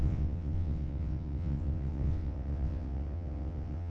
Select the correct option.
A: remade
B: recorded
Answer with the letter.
A